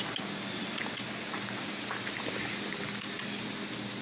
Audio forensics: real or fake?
real